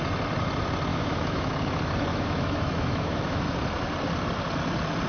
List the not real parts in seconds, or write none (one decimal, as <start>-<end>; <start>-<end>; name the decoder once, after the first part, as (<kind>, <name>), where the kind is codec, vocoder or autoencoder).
0.9-1.5 (autoencoder, DAC-VAE); 2.1-3.4